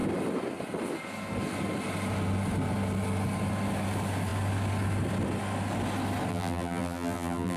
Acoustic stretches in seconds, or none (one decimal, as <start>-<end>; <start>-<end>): 0.0-6.3